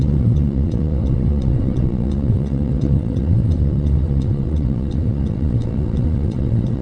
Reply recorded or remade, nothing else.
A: remade